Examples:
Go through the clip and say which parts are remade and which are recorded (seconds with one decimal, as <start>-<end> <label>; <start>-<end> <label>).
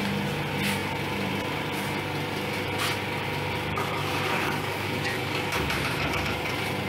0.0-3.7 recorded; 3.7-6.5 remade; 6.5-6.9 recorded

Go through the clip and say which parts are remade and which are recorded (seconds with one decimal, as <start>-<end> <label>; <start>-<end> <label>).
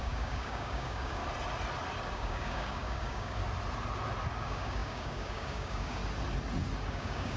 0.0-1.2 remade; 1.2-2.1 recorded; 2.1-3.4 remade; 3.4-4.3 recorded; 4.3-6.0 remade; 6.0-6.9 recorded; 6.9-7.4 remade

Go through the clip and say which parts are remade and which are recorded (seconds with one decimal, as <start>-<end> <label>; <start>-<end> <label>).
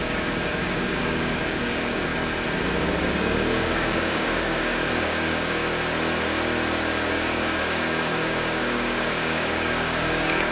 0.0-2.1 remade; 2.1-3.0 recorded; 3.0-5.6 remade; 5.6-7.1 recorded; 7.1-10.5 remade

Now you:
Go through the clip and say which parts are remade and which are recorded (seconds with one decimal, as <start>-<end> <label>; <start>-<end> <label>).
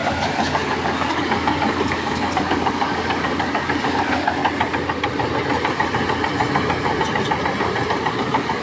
0.0-4.4 remade; 4.4-8.1 recorded; 8.1-8.6 remade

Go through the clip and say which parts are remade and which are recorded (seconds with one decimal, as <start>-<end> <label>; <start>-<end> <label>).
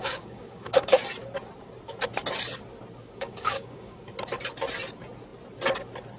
0.0-1.0 remade; 1.0-3.0 recorded; 3.0-4.1 remade; 4.1-6.2 recorded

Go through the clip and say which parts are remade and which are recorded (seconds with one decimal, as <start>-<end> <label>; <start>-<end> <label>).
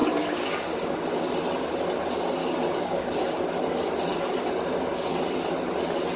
0.0-1.3 remade; 1.3-2.4 recorded; 2.4-3.4 remade; 3.4-4.1 recorded; 4.1-5.2 remade; 5.2-6.2 recorded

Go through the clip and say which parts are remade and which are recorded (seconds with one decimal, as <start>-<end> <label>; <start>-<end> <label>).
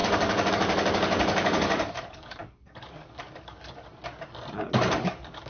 0.0-3.9 remade; 3.9-5.0 recorded; 5.0-5.5 remade